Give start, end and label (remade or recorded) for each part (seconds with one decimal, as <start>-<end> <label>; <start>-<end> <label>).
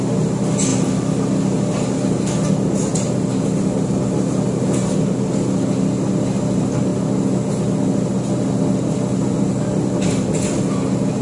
0.0-11.2 recorded